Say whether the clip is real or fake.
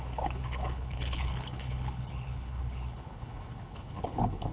fake